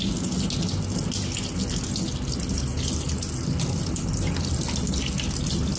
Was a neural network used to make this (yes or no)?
no